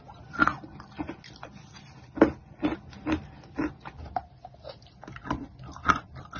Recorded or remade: recorded